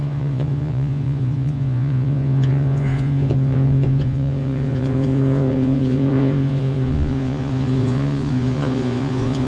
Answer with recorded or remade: remade